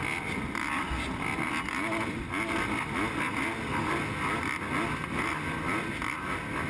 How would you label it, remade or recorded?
recorded